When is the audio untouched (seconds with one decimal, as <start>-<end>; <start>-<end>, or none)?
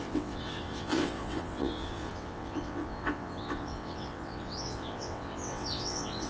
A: none